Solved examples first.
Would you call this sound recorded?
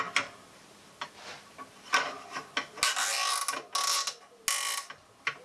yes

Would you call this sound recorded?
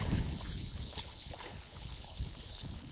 no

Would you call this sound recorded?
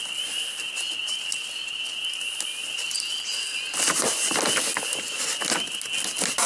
yes